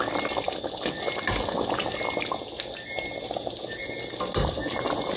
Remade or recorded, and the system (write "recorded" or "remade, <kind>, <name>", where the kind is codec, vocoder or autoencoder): recorded